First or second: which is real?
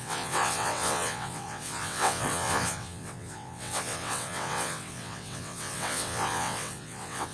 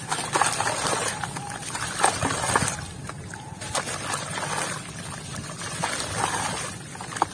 second